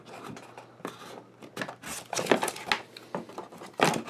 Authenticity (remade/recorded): recorded